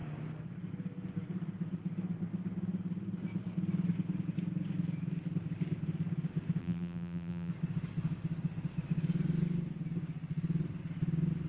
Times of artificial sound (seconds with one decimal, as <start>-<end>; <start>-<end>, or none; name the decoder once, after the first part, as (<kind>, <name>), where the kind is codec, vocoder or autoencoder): 6.6-7.5 (vocoder, BigVGAN v2)

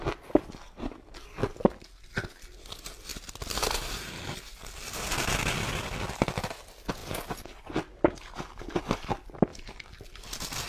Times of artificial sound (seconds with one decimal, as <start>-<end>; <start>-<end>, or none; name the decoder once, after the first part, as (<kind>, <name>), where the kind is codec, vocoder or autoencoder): none

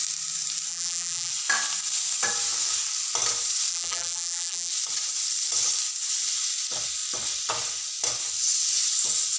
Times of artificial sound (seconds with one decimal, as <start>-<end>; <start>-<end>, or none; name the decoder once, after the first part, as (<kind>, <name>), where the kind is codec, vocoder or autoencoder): 0.7-1.3 (vocoder, BigVGAN v2); 3.7-4.7